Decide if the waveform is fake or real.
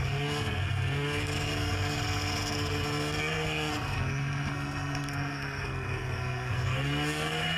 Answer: fake